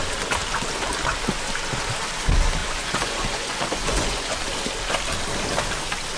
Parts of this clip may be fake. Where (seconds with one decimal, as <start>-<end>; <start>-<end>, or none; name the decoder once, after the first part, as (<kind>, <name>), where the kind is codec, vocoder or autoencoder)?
2.6-4.4 (vocoder, Vocos)